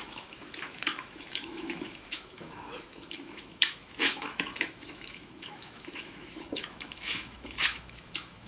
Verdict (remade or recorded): remade